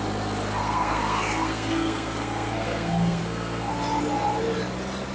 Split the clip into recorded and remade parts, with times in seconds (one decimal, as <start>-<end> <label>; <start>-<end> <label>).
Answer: 0.0-0.6 recorded; 0.6-3.7 remade; 3.7-5.1 recorded